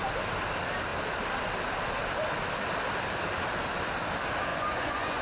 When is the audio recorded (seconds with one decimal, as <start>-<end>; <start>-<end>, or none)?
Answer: 0.0-4.5